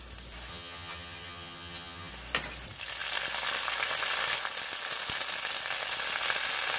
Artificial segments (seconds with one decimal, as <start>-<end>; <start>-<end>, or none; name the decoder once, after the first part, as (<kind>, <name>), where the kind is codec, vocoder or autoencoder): 0.5-2.1 (vocoder, HiFi-GAN)

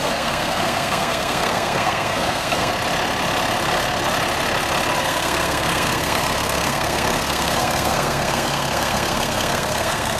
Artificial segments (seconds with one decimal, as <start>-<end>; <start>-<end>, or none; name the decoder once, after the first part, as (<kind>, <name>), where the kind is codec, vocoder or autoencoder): 0.0-2.7 (codec, SNAC); 5.0-10.2

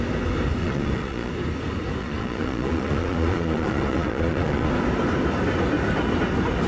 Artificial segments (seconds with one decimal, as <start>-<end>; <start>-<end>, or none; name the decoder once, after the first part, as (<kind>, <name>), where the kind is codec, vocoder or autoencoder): 0.6-1.3 (vocoder, Vocos); 2.0-4.7

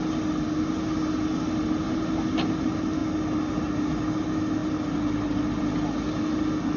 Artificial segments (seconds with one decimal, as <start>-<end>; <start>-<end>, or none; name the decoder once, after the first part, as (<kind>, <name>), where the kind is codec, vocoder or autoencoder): none

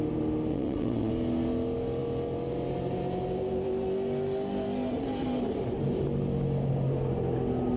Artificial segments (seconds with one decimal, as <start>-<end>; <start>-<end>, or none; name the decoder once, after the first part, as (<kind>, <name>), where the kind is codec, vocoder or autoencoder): 0.5-1.1 (vocoder, WaveNeXt)